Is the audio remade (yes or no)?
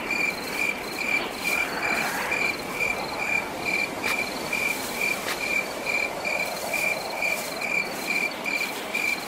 yes